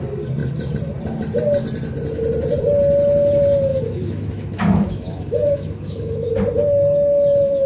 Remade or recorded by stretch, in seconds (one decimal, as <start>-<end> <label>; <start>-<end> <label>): 0.0-3.7 recorded; 3.7-6.3 remade; 6.3-7.7 recorded